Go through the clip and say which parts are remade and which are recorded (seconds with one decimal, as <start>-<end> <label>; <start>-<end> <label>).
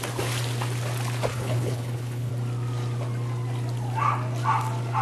0.0-1.3 recorded; 1.3-2.3 remade; 2.3-5.0 recorded